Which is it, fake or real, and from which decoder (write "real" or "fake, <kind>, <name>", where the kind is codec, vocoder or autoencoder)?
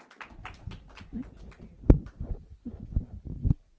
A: real